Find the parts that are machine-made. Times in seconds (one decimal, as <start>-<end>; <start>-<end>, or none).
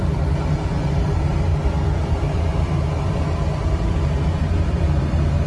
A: 0.0-5.5